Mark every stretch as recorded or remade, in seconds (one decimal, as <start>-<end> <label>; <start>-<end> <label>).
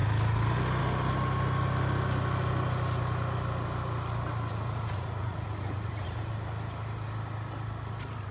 0.0-4.5 recorded; 4.5-6.3 remade; 6.3-8.3 recorded